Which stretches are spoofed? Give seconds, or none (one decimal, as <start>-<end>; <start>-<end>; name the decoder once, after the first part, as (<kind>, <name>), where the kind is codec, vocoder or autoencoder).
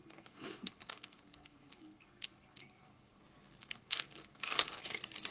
0.0-3.2 (codec, SNAC); 3.6-4.8